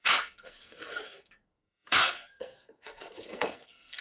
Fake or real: fake